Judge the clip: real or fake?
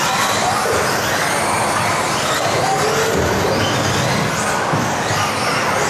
real